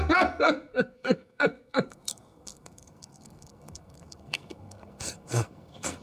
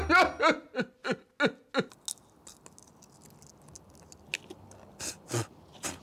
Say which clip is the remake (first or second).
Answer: first